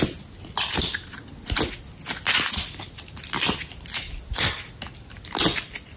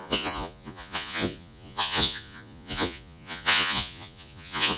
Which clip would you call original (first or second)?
first